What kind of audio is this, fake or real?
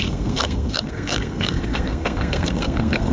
fake